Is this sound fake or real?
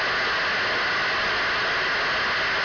real